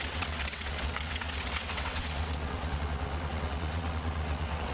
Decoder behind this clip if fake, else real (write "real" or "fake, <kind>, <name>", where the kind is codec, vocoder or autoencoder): fake, vocoder, WaveNeXt